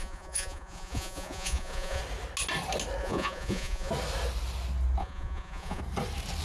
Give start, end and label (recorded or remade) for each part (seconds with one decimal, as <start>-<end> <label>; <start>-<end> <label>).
0.0-2.0 remade; 2.0-3.0 recorded; 3.0-3.9 remade; 3.9-5.0 recorded; 5.0-5.8 remade; 5.8-6.4 recorded